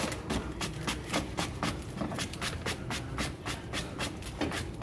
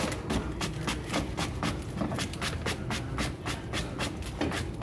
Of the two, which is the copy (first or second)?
first